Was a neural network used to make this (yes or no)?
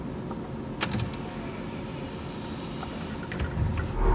no